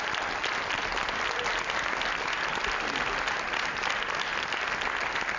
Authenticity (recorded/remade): recorded